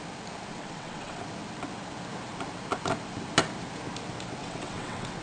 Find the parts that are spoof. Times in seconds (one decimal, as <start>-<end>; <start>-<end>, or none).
0.5-1.2; 4.4-5.2